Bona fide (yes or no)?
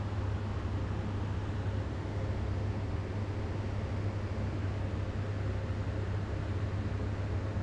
yes